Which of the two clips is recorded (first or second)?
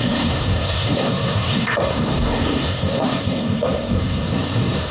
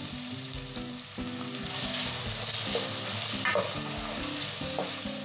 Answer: second